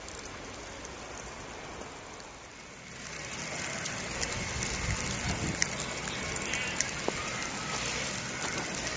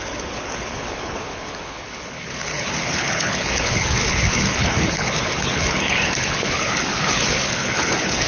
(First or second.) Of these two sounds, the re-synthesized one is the second